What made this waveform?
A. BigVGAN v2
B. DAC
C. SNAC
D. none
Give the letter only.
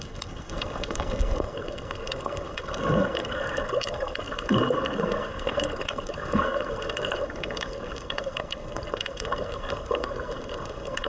C